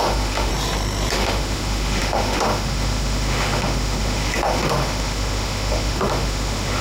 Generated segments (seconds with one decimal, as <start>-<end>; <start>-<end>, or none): 0.0-0.5; 1.1-6.8